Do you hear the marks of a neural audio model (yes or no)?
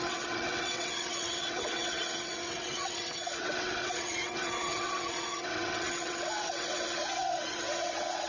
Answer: yes